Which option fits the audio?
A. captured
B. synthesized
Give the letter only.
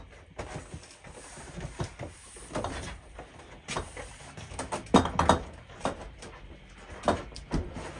A